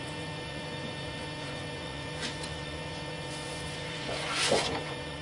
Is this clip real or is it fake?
fake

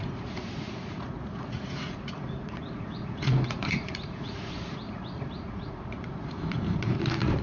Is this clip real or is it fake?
fake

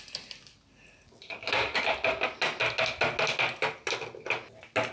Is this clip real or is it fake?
real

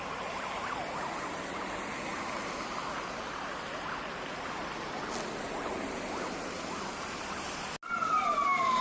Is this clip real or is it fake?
real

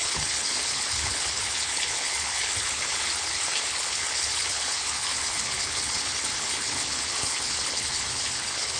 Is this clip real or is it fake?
fake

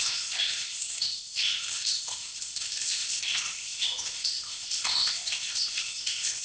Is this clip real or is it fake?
fake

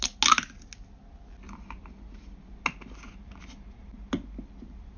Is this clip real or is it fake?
real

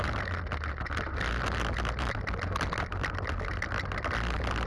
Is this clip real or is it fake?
real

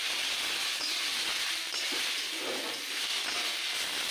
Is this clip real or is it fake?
real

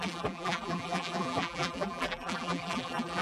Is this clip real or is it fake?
fake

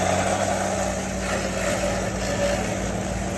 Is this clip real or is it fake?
real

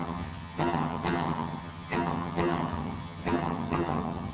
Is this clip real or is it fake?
fake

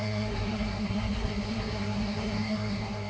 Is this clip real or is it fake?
fake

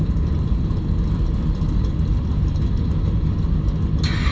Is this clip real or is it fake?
real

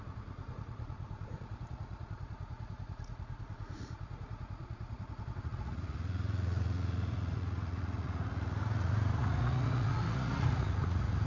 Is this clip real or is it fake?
fake